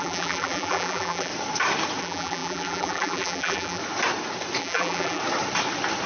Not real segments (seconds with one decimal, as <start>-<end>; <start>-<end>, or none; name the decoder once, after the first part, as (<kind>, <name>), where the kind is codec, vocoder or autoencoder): 0.0-1.3 (vocoder, BigVGAN v2); 2.0-3.8; 4.6-5.2